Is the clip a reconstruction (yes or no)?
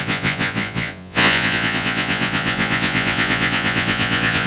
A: yes